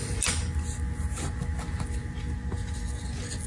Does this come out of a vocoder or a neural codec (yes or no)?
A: no